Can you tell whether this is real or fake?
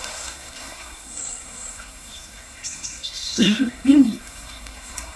fake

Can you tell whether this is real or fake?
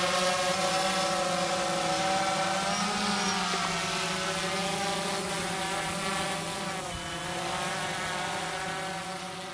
real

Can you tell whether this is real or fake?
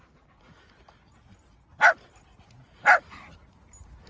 real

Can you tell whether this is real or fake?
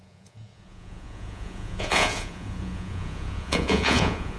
fake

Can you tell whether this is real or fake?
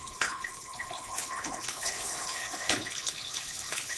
fake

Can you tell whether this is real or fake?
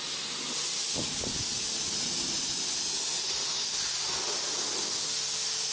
real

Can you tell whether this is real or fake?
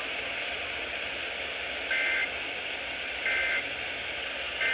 real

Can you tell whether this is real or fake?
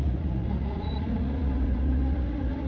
fake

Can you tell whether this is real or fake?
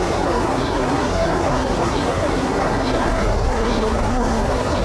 fake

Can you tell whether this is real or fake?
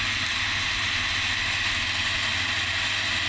real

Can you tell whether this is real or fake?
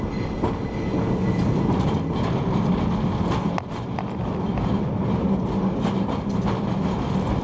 real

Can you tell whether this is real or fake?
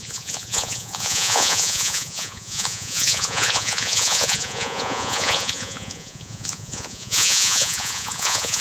fake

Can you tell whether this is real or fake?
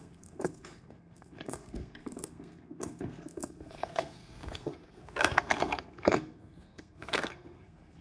fake